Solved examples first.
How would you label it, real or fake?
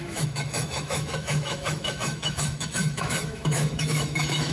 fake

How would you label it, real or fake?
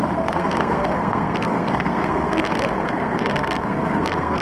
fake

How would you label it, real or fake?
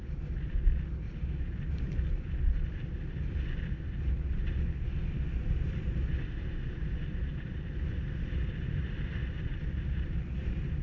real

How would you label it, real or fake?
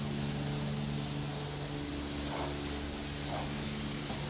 real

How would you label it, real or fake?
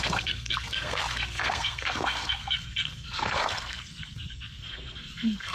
fake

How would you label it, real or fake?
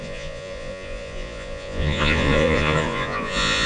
fake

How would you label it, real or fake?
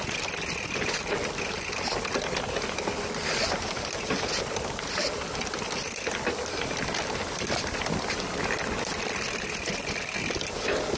real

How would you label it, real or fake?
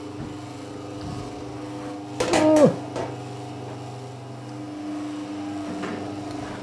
real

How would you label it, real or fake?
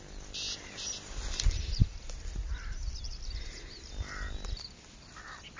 real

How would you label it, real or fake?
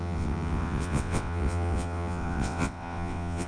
fake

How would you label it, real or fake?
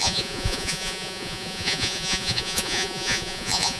fake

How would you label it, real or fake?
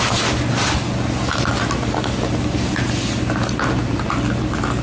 real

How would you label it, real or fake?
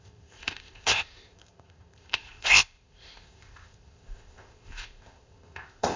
fake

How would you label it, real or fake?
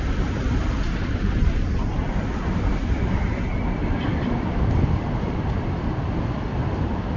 fake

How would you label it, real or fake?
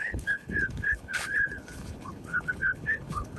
fake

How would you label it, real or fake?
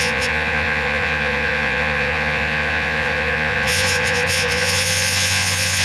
fake